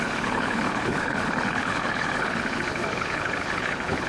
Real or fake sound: fake